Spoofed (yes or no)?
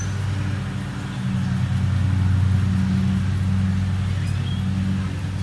no